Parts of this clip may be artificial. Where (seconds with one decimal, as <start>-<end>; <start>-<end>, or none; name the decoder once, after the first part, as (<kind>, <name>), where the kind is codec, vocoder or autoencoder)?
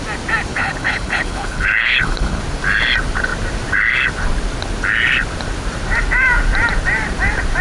0.5-2.4 (codec, HILCodec)